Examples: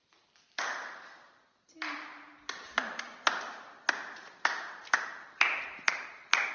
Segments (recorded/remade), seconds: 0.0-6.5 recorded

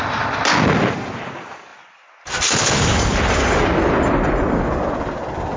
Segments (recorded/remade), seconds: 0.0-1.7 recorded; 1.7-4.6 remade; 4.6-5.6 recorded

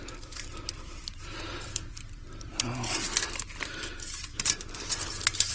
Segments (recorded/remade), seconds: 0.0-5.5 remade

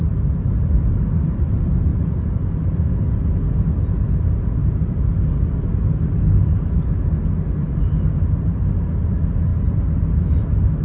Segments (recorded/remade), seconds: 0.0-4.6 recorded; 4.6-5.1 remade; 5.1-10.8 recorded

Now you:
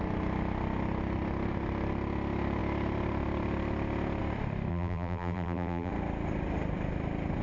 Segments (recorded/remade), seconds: 0.0-4.7 recorded; 4.7-5.9 remade; 5.9-7.4 recorded

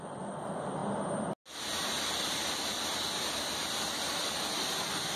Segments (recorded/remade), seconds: 0.0-0.8 remade; 0.8-3.9 recorded; 3.9-5.2 remade